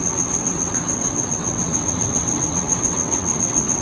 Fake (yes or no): yes